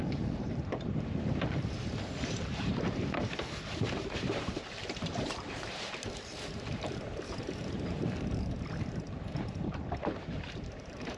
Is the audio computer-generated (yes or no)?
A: yes